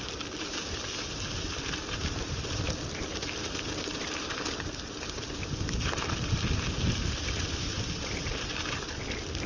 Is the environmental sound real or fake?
real